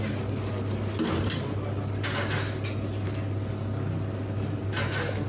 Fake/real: real